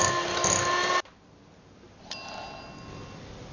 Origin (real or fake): real